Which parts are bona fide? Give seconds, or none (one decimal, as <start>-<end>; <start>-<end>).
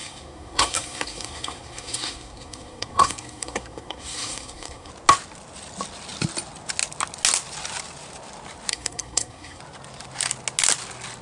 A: 4.9-8.7; 9.6-11.2